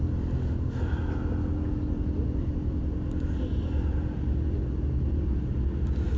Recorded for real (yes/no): yes